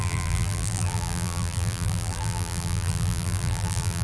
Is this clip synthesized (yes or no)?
yes